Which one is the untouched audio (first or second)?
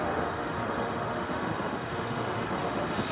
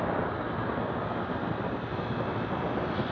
second